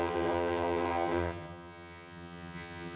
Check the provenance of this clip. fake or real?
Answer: fake